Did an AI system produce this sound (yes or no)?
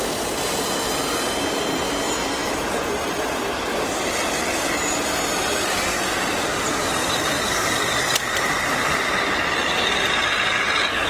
no